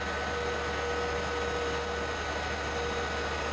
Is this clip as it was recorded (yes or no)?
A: yes